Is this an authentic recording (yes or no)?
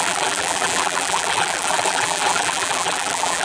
no